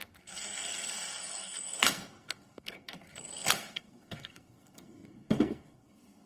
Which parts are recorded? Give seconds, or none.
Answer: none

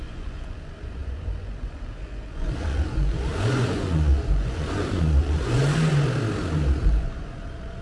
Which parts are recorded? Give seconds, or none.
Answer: 5.6-6.8

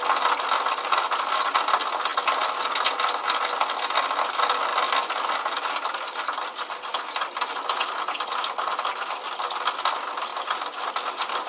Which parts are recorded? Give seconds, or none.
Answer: 0.0-11.5

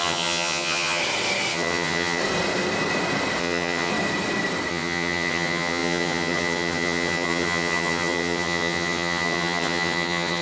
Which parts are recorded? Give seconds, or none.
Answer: 1.0-1.5; 2.2-3.4; 3.9-4.7

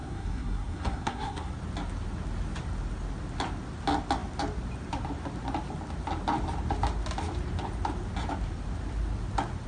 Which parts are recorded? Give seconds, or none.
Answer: 1.5-9.7

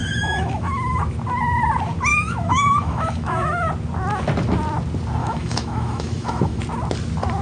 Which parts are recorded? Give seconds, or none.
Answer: 1.0-2.1; 3.7-5.2; 6.6-7.4